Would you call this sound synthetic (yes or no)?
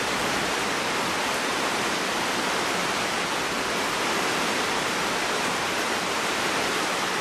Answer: yes